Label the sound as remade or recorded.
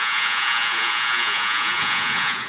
remade